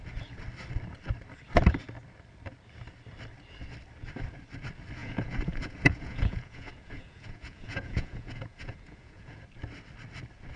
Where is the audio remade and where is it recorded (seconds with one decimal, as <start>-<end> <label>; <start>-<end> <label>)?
0.0-5.0 recorded; 5.0-9.4 remade; 9.4-10.6 recorded